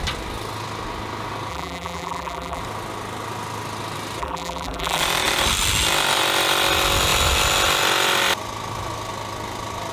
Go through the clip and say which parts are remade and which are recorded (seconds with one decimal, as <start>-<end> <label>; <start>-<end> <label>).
0.0-1.5 recorded; 1.5-2.6 remade; 2.6-4.2 recorded; 4.2-5.0 remade; 5.0-9.9 recorded